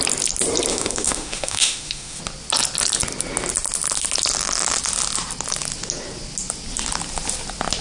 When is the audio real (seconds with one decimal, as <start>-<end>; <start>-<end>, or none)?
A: 0.0-0.7; 2.2-7.8